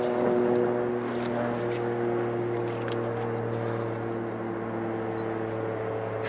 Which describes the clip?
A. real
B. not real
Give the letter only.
A